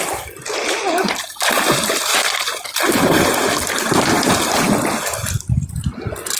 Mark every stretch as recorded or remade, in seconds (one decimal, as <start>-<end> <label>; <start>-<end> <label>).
0.0-6.4 recorded